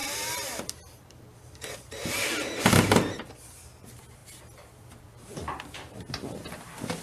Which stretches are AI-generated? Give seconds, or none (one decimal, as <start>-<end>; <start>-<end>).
0.0-2.7; 4.2-7.0